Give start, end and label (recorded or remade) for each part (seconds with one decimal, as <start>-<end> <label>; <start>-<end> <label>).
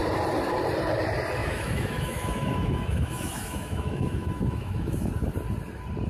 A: 0.0-1.4 recorded; 1.4-5.1 remade; 5.1-6.1 recorded